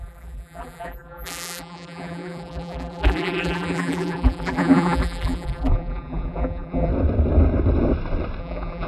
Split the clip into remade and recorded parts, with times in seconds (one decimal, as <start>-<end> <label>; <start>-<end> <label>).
0.0-6.9 remade; 6.9-8.4 recorded; 8.4-8.9 remade